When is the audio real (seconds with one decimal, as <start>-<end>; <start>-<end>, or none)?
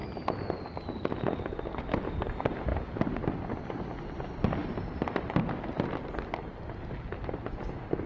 0.0-8.1